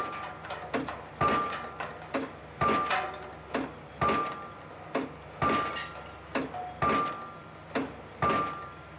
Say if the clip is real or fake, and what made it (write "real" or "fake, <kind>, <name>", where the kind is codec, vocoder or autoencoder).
real